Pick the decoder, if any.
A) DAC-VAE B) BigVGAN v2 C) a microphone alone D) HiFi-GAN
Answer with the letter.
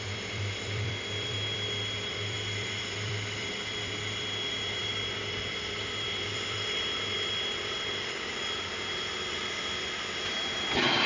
B